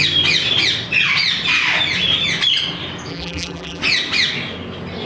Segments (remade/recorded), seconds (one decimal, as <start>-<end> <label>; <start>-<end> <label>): 0.0-3.1 recorded; 3.1-3.8 remade; 3.8-5.1 recorded